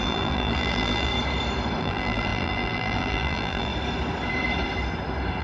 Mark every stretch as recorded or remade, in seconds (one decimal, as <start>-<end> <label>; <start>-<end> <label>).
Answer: 0.0-1.1 remade; 1.1-1.8 recorded; 1.8-3.7 remade; 3.7-5.4 recorded